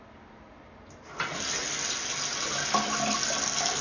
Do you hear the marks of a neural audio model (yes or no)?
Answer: no